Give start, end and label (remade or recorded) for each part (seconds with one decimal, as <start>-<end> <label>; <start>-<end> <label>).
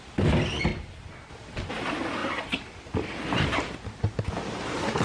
0.0-0.7 recorded; 0.7-1.3 remade; 1.3-5.0 recorded